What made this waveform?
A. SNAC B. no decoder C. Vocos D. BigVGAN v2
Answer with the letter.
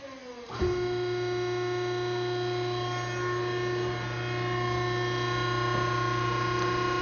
B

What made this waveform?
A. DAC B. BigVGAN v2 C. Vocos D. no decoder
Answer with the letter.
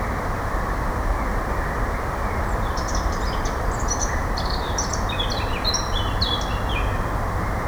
B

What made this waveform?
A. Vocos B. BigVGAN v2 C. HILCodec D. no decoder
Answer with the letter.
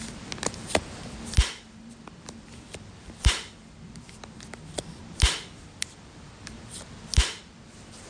B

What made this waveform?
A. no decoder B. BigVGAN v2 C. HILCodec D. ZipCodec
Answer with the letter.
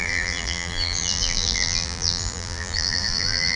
B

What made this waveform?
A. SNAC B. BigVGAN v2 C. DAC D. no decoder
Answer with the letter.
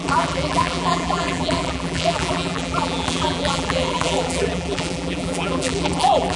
B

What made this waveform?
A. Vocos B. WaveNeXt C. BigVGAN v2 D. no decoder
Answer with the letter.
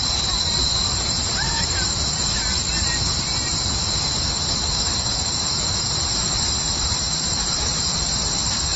C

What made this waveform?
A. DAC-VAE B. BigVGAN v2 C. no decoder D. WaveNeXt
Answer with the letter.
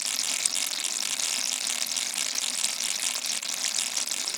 C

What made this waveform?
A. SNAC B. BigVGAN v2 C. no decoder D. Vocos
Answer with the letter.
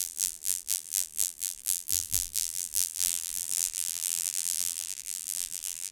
B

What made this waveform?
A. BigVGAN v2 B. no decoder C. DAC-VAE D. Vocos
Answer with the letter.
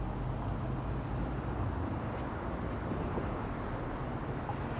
B